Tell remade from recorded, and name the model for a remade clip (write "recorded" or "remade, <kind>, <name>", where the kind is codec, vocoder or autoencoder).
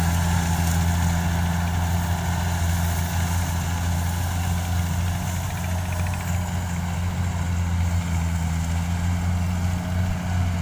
recorded